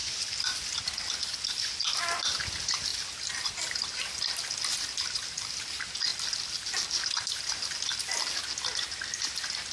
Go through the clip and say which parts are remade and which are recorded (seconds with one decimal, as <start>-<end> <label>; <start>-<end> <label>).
0.0-0.8 remade; 0.8-2.9 recorded; 2.9-5.6 remade; 5.6-6.1 recorded; 6.1-7.5 remade; 7.5-9.7 recorded